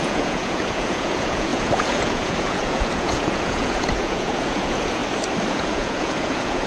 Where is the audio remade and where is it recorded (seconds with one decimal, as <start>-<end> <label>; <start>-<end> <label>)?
0.0-5.0 remade; 5.0-5.5 recorded; 5.5-6.7 remade